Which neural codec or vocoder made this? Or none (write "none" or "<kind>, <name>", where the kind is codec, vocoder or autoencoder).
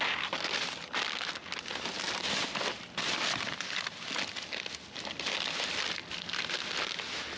none